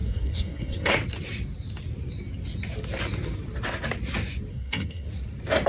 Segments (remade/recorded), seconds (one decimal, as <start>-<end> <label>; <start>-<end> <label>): 0.0-0.9 remade; 0.9-4.5 recorded; 4.5-5.1 remade; 5.1-5.7 recorded